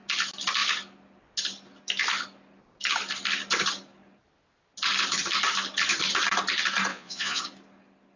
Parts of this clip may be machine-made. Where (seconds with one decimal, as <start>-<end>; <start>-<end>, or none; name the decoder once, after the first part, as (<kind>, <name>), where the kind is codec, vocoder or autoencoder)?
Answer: 6.9-7.4 (vocoder, Vocos)

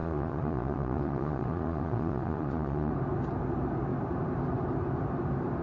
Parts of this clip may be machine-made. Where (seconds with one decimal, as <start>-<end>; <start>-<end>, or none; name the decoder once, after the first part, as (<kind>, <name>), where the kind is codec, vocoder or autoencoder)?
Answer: 0.0-2.9 (vocoder, Vocos)

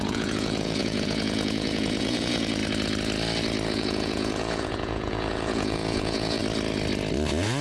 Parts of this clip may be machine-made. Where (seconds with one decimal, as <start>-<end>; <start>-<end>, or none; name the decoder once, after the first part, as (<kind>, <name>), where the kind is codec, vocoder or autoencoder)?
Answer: 0.0-2.6 (vocoder, Vocos); 3.7-6.4

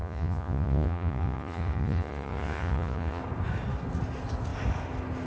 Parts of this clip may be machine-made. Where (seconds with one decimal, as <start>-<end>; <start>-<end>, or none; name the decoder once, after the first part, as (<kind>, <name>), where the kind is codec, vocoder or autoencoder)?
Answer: 0.0-3.2 (vocoder, Vocos)

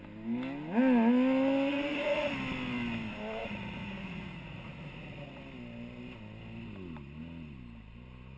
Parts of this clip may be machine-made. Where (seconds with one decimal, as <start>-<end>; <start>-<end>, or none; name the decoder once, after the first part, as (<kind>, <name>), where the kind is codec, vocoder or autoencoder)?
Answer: 1.7-2.3 (vocoder, Vocos); 3.4-5.4

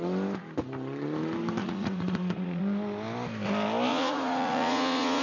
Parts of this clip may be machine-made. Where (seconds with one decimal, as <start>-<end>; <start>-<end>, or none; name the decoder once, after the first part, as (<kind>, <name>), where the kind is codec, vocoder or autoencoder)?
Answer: 1.6-2.6 (vocoder, Vocos); 3.9-5.2

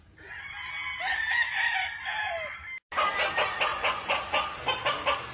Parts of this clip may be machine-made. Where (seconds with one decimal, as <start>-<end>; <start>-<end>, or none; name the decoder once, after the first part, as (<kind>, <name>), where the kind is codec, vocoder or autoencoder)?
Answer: 3.7-4.2 (vocoder, Vocos)

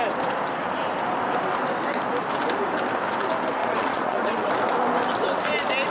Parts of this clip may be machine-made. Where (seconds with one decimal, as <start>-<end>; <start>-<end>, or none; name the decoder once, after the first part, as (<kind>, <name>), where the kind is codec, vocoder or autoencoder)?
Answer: 3.6-4.5 (vocoder, Vocos)